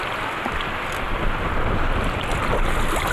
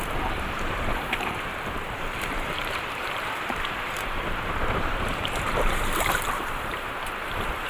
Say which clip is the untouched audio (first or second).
first